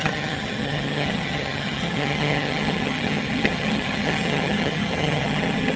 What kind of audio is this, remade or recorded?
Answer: remade